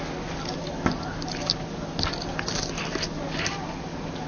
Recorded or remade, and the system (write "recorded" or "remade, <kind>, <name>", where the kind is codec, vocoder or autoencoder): recorded